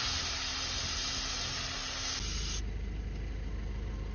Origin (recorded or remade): recorded